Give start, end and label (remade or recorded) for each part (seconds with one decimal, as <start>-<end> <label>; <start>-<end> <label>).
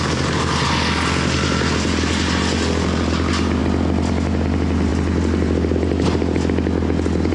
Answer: 0.0-7.3 recorded